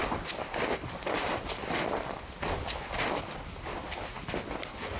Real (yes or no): no